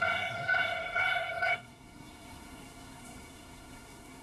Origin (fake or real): fake